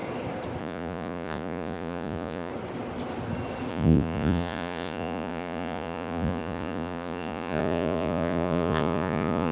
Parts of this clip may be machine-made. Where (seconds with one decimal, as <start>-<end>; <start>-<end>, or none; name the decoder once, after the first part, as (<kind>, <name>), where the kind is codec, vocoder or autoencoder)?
0.6-2.5 (vocoder, Vocos); 3.7-9.5